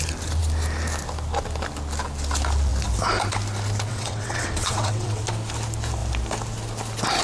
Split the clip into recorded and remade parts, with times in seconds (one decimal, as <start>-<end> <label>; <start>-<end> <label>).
0.0-3.9 recorded; 3.9-5.2 remade; 5.2-7.2 recorded